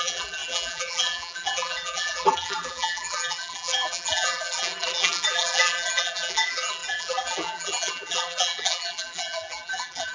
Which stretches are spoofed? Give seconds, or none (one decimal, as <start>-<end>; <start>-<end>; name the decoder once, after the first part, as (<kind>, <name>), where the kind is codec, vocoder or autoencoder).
0.0-10.1 (vocoder, BigVGAN v2)